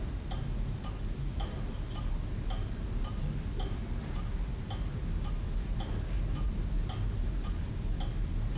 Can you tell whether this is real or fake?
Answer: real